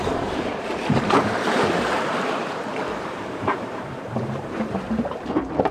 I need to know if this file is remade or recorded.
remade